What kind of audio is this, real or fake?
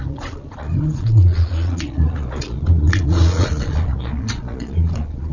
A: fake